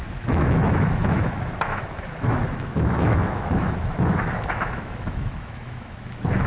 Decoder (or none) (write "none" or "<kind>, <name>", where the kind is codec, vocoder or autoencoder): autoencoder, DAC-VAE